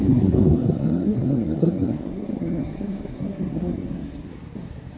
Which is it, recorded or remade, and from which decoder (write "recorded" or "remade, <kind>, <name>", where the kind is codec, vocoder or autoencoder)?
remade, codec, SNAC